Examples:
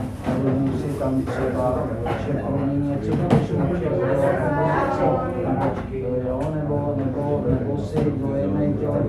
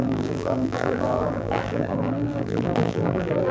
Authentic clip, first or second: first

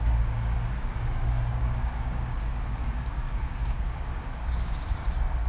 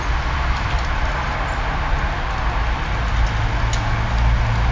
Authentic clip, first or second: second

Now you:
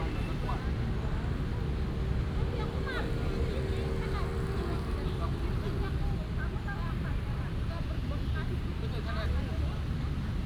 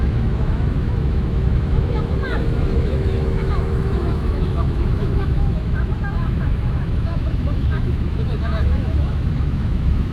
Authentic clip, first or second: first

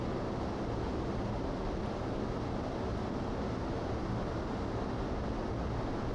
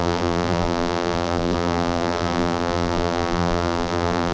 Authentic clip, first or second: first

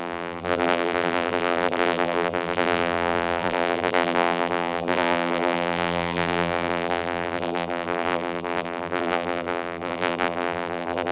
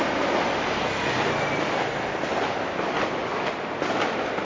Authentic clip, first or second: second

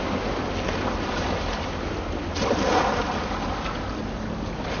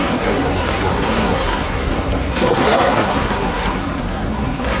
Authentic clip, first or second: first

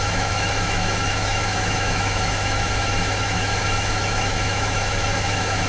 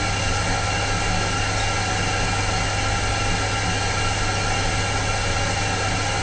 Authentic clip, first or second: second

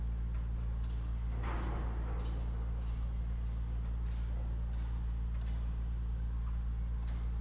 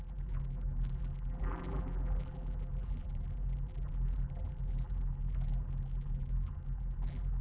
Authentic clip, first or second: first